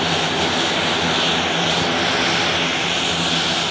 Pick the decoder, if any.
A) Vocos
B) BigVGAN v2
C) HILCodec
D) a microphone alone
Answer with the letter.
D